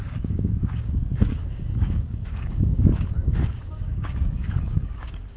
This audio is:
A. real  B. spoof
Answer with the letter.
B